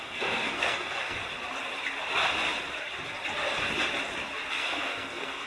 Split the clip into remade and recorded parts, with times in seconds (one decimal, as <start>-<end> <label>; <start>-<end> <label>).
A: 0.0-1.2 remade; 1.2-4.5 recorded; 4.5-5.5 remade